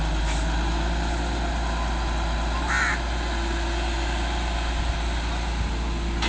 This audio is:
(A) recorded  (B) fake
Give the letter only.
A